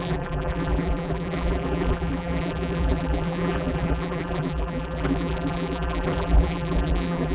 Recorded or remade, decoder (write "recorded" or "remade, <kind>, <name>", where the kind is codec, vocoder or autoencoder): remade, vocoder, BigVGAN v2